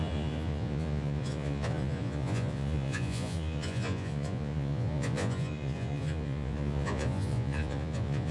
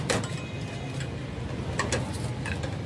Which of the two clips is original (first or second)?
second